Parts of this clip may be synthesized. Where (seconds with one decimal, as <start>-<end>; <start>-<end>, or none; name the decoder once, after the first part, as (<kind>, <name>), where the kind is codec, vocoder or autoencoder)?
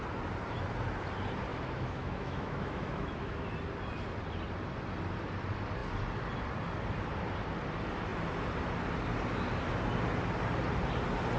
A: 1.5-3.5 (autoencoder, DAC-VAE)